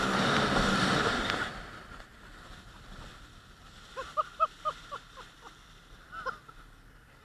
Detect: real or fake fake